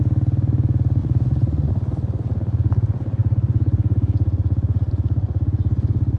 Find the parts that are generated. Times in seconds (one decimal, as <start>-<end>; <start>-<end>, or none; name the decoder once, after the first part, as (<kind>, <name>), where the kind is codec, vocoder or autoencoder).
1.0-1.7 (vocoder, Vocos)